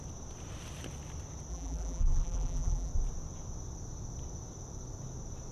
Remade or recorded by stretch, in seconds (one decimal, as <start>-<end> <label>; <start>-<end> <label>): 0.0-1.5 recorded; 1.5-2.9 remade; 2.9-5.5 recorded